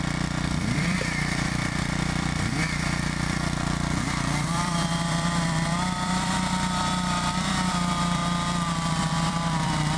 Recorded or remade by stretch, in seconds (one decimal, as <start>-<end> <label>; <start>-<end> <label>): 0.0-8.2 remade; 8.2-8.9 recorded; 8.9-10.0 remade